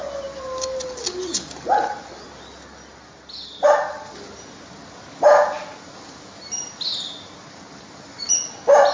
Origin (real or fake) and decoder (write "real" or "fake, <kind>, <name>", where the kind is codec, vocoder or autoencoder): real